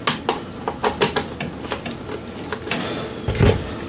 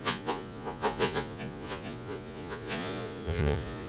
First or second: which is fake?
second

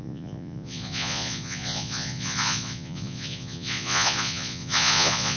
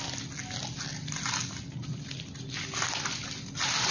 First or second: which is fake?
first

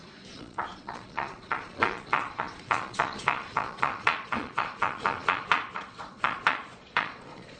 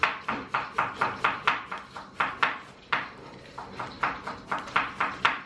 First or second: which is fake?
first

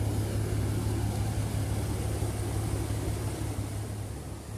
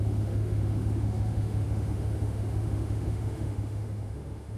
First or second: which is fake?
second